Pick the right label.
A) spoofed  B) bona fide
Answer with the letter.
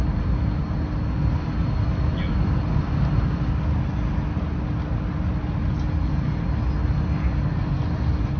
B